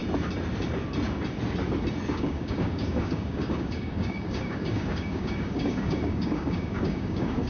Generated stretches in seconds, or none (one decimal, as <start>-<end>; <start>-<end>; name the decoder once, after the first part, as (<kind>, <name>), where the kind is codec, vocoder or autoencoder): 2.1-7.5 (codec, DAC)